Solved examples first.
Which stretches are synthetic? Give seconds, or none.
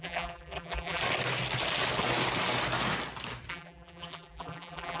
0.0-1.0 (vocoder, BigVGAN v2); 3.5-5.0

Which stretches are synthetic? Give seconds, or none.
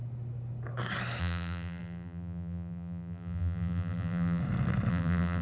1.2-4.4 (vocoder, BigVGAN v2); 4.9-5.4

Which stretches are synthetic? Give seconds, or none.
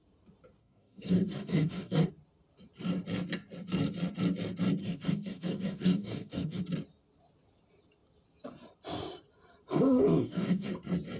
0.6-2.1 (codec, DAC); 4.8-6.6; 9.7-10.7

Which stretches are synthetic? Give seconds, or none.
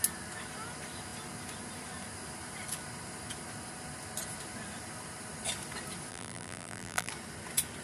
6.1-7.1 (vocoder, BigVGAN v2)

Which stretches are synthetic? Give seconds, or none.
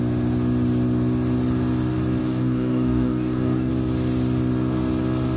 2.2-3.7 (codec, DAC)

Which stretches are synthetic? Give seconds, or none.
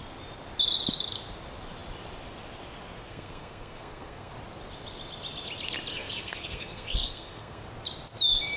3.0-4.3 (codec, SNAC); 5.9-7.6